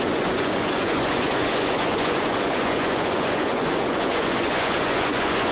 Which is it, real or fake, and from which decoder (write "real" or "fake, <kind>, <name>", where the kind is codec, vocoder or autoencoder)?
fake, vocoder, Vocos